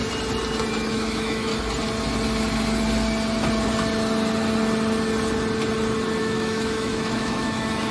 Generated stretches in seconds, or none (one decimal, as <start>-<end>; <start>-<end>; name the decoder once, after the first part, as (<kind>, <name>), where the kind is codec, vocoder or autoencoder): 0.9-1.5 (autoencoder, DAC-VAE); 6.2-7.9